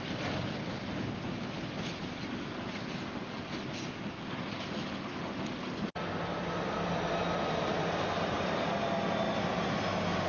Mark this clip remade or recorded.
recorded